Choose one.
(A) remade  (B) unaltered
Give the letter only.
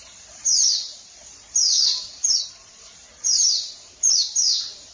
A